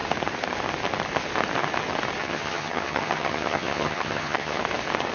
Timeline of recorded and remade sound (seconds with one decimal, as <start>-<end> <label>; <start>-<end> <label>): 0.0-2.2 recorded; 2.2-4.6 remade; 4.6-5.1 recorded